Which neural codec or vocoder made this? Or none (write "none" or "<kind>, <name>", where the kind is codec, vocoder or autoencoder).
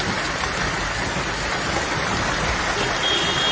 none